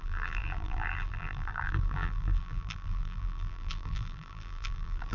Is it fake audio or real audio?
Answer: fake